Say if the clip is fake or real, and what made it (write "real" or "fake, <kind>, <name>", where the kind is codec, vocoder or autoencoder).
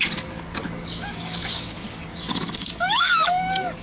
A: fake, codec, DAC